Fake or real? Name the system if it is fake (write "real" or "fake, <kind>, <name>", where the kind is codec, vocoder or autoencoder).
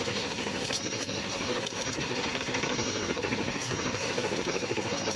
fake, codec, SNAC